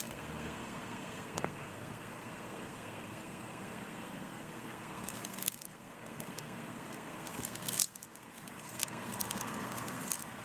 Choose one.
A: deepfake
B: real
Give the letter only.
A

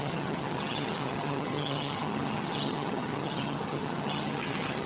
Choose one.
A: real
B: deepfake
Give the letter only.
B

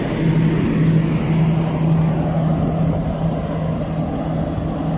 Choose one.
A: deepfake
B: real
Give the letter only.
B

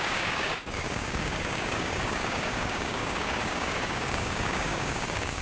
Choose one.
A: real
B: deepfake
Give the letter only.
B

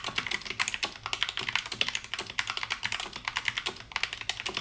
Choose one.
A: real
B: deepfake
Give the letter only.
A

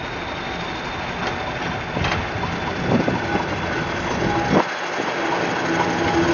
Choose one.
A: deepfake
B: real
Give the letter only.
B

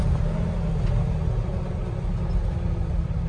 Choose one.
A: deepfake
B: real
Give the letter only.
B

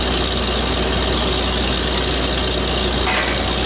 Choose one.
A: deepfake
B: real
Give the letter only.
B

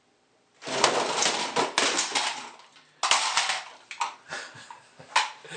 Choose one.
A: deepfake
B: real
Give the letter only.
B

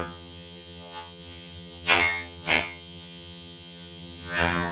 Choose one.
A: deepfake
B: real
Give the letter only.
A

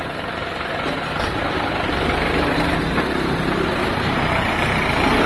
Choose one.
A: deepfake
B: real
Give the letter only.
A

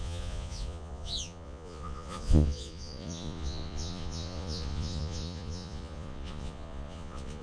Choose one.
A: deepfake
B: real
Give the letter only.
A